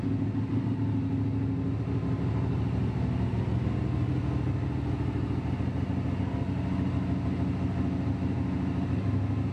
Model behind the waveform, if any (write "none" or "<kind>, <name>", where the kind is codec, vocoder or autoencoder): none